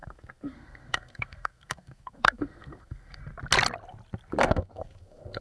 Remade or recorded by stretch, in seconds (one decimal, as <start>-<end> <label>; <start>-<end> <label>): 0.0-3.2 remade; 3.2-4.4 recorded; 4.4-5.4 remade

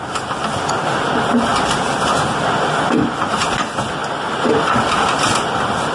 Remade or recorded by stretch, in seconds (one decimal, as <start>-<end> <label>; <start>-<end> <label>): 0.0-5.9 recorded

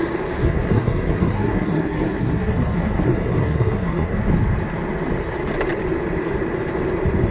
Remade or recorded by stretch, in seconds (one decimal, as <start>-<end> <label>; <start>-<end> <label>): 0.0-0.4 recorded; 0.4-4.3 remade; 4.3-7.3 recorded

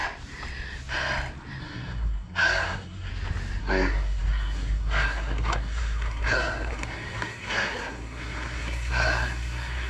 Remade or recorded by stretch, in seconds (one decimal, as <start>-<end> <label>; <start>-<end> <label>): 0.0-1.6 recorded; 1.6-3.1 remade; 3.1-3.6 recorded; 3.6-9.9 remade

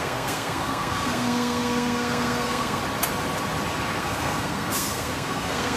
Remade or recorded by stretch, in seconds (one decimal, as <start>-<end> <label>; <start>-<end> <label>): 0.0-2.8 remade; 2.8-4.0 recorded; 4.0-5.8 remade

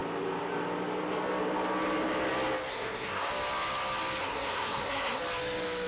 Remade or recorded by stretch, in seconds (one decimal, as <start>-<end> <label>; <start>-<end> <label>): 0.0-2.7 recorded; 2.7-3.3 remade; 3.3-4.2 recorded; 4.2-5.2 remade; 5.2-5.9 recorded

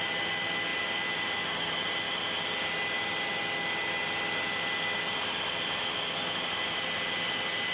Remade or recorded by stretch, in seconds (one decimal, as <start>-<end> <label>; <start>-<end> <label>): 0.0-7.7 recorded

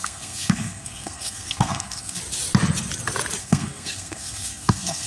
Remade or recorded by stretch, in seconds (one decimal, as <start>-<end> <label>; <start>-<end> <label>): 0.0-2.2 remade; 2.2-3.4 recorded; 3.4-5.1 remade